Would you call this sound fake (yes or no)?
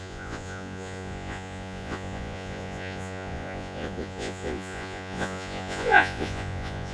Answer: yes